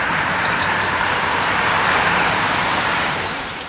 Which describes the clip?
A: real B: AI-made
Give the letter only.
B